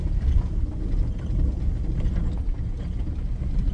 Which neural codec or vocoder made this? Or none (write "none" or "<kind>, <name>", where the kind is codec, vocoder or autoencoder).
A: none